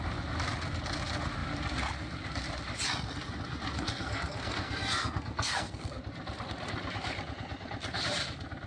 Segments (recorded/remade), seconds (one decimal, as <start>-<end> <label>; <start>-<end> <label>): 0.0-3.7 recorded; 3.7-6.0 remade; 6.0-8.7 recorded